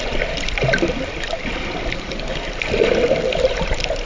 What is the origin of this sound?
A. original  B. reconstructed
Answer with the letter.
A